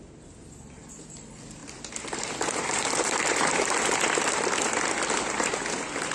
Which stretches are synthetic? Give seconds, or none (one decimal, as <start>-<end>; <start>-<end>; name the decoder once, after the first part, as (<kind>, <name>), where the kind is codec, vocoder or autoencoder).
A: 1.6-5.3 (vocoder, BigVGAN v2)